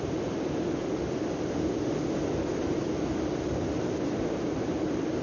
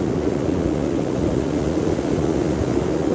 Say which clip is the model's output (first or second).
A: second